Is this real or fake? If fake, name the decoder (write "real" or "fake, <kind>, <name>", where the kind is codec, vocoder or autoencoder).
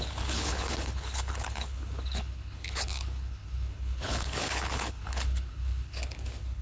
fake, codec, HILCodec